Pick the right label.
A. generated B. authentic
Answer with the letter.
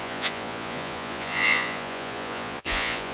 A